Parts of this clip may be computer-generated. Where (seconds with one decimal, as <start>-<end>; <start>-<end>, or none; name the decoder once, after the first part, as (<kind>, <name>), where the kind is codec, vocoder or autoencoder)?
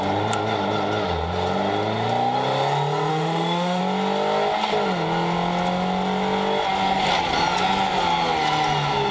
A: 3.1-3.8 (autoencoder, DAC-VAE)